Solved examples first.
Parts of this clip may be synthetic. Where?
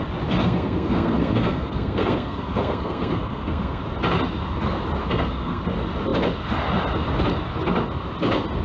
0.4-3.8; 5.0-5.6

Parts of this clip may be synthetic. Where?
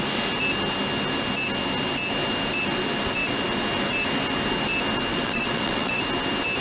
5.1-6.0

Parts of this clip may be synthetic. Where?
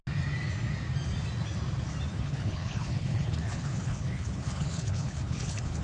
2.1-5.8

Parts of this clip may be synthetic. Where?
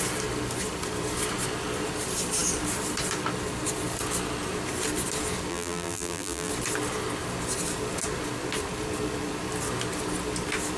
5.5-6.5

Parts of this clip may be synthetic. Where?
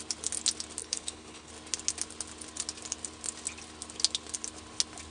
0.8-1.5